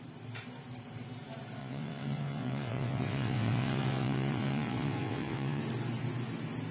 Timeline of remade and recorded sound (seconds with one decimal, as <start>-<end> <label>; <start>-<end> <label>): 0.0-1.6 recorded; 1.6-5.6 remade; 5.6-6.7 recorded